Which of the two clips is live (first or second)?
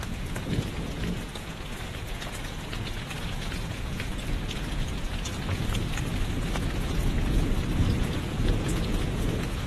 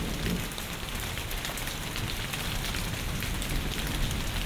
second